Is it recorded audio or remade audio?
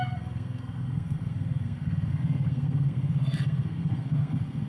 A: remade